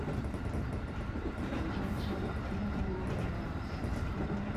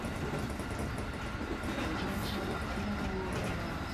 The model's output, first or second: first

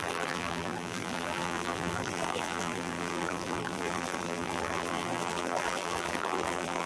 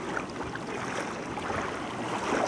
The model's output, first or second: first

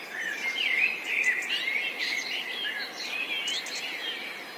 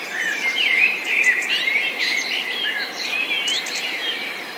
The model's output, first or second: second